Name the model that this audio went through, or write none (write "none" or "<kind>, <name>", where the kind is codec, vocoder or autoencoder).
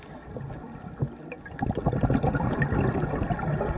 none